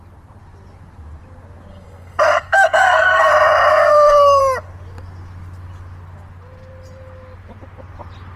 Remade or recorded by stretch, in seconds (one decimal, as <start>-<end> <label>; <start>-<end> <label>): 0.0-1.7 recorded; 1.7-3.3 remade; 3.3-3.7 recorded; 3.7-4.4 remade; 4.4-8.4 recorded